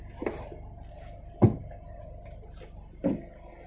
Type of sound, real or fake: real